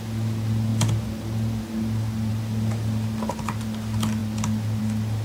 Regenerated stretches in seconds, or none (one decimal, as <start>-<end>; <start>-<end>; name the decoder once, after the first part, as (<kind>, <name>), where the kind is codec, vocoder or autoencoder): none